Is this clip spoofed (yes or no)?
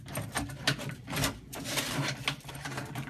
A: yes